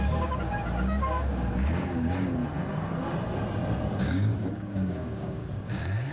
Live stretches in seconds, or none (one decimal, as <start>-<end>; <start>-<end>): 2.4-4.0